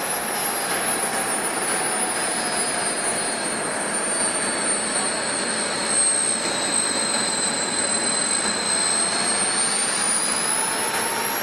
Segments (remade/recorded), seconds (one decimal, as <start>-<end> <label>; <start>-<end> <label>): 0.0-11.4 recorded

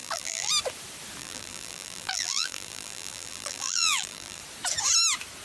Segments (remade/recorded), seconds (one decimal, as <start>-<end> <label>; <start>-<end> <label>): 0.0-0.5 remade; 0.5-1.2 recorded; 1.2-4.4 remade; 4.4-5.4 recorded

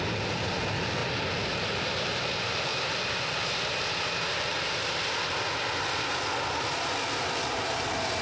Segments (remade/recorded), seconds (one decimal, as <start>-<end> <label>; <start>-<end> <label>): 0.0-1.0 remade; 1.0-1.6 recorded; 1.6-2.7 remade; 2.7-7.6 recorded; 7.6-8.2 remade